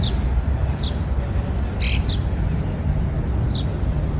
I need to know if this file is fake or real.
real